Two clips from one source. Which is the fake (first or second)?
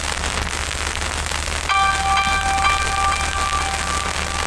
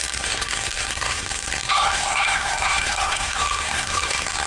second